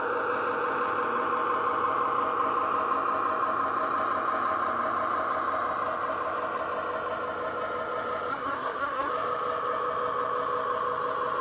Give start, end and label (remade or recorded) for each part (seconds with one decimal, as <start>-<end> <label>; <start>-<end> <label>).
0.0-8.3 recorded; 8.3-9.1 remade; 9.1-11.4 recorded